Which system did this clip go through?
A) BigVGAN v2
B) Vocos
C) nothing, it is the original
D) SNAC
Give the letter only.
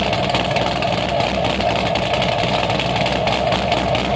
C